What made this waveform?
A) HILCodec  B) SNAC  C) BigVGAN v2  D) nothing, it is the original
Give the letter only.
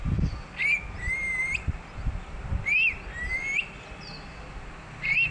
D